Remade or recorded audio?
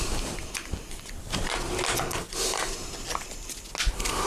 recorded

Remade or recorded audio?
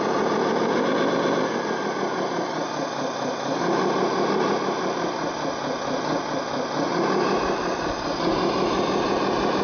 recorded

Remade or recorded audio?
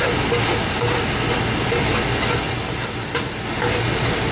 recorded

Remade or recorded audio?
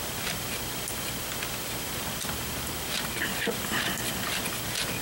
recorded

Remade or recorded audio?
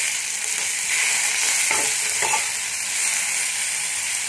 recorded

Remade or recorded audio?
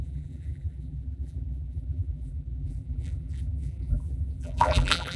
remade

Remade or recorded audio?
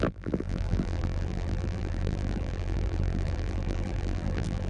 remade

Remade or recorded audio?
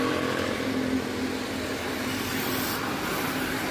recorded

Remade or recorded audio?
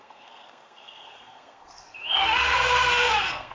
remade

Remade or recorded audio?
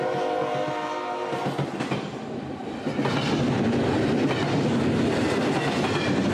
recorded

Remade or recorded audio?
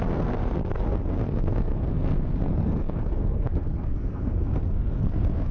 remade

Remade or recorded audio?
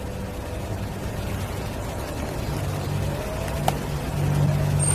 recorded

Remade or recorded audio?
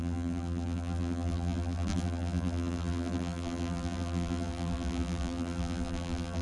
remade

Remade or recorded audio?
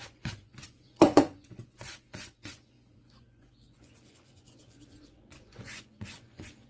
remade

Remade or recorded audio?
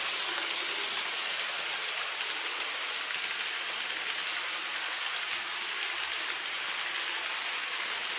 recorded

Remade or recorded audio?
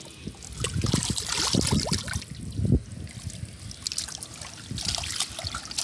recorded